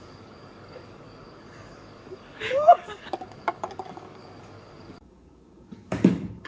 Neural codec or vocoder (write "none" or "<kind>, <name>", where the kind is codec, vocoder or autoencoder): codec, DAC